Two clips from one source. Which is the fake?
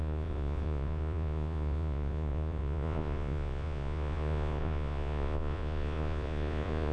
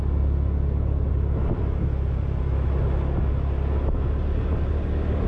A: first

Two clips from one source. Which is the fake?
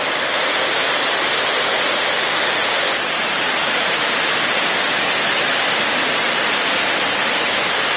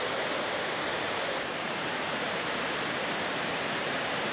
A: second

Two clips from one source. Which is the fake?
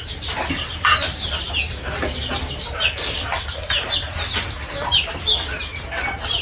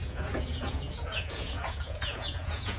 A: second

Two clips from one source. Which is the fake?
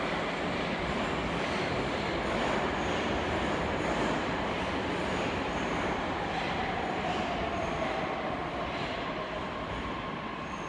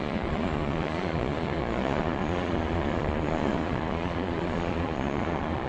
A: second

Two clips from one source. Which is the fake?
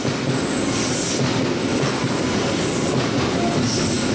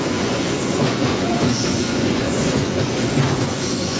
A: second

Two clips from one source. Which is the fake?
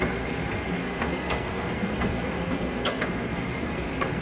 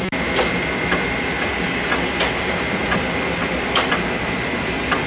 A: first